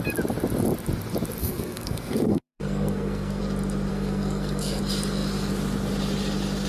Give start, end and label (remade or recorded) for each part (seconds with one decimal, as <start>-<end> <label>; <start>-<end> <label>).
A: 0.0-1.4 recorded; 1.4-3.4 remade; 3.4-3.9 recorded; 3.9-4.8 remade; 4.8-6.7 recorded